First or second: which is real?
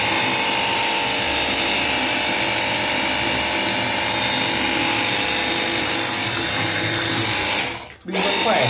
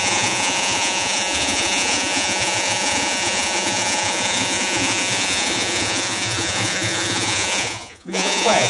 first